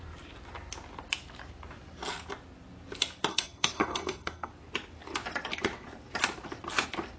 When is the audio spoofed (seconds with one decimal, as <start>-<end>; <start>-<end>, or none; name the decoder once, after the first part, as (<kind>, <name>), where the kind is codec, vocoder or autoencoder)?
3.3-4.5 (codec, SNAC)